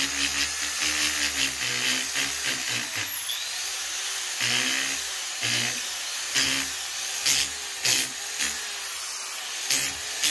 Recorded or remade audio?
recorded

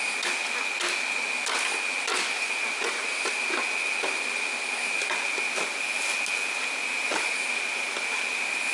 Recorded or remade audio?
recorded